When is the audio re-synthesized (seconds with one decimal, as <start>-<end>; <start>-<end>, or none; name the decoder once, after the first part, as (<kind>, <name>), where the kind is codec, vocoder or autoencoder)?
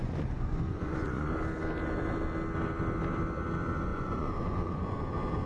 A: 0.0-1.3 (vocoder, Vocos); 3.9-5.0